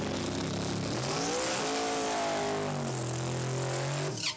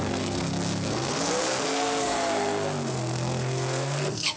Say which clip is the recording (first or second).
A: first